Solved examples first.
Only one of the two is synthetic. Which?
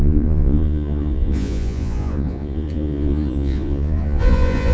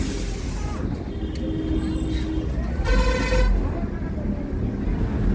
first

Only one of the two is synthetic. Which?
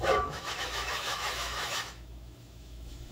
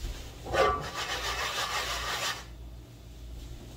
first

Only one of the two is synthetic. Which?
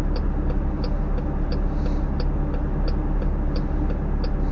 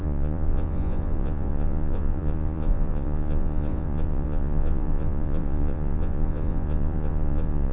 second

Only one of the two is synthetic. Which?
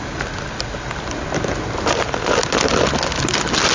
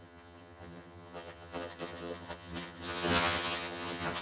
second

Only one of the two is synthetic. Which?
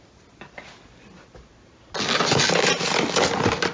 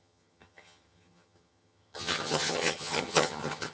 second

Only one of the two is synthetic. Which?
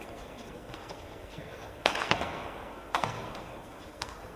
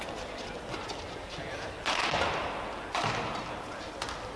first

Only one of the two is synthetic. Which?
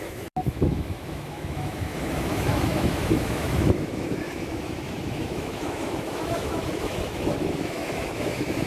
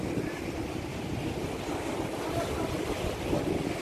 first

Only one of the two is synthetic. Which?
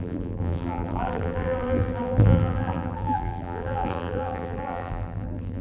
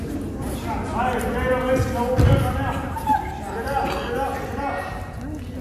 first